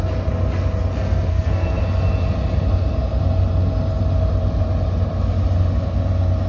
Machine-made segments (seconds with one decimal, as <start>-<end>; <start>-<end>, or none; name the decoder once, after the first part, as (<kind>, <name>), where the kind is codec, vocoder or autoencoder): 1.3-1.8 (codec, SNAC)